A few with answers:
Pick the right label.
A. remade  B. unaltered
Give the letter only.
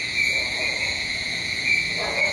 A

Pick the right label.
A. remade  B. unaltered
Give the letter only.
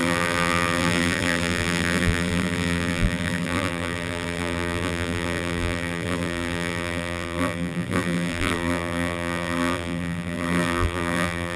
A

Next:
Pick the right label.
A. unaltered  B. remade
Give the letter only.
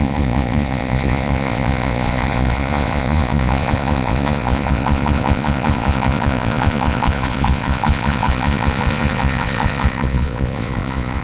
B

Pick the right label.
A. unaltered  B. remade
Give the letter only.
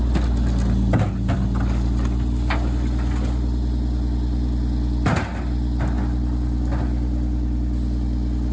A